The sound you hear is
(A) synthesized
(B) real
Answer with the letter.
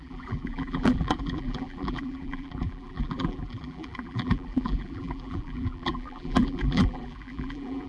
A